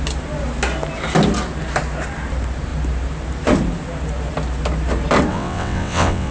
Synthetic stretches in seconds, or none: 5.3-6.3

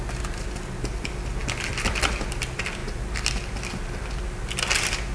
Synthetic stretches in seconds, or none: none

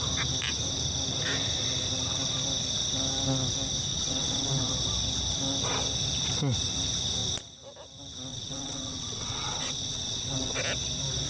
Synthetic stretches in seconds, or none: 3.9-4.7; 8.3-10.6

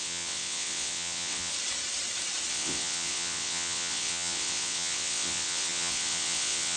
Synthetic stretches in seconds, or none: 0.0-1.5; 2.5-6.8

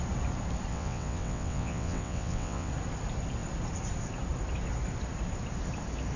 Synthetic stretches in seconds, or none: 0.7-2.7